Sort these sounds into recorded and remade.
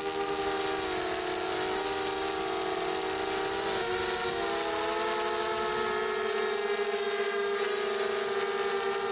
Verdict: recorded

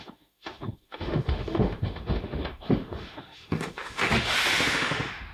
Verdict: remade